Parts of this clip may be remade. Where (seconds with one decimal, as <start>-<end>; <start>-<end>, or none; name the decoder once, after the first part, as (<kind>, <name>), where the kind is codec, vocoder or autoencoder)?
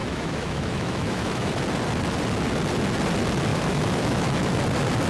0.0-1.5 (autoencoder, DAC-VAE); 3.5-4.5